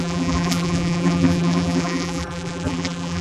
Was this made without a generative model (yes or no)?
no